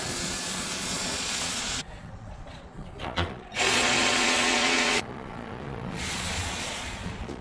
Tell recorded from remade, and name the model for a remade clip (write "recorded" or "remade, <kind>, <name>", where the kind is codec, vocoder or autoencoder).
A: remade, vocoder, Vocos